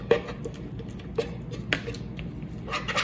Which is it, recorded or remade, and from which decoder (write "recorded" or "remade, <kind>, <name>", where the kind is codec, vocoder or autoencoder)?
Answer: recorded